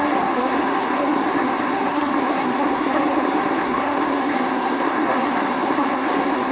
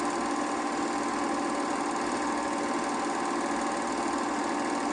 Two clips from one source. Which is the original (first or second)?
second